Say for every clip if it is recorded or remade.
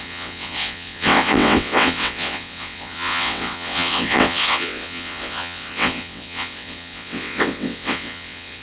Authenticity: remade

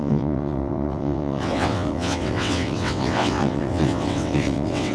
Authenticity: remade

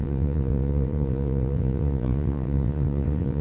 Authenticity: remade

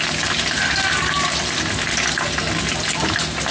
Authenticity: recorded